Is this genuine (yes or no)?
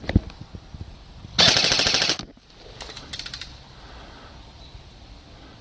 yes